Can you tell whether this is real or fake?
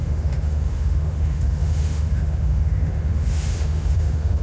fake